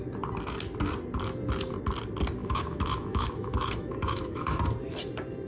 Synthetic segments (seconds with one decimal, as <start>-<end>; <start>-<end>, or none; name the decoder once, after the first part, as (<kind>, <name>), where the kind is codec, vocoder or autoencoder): 2.4-4.6 (autoencoder, DAC-VAE)